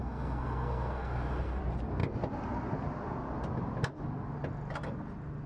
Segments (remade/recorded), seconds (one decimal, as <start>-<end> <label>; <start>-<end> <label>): 0.0-1.6 remade; 1.6-5.5 recorded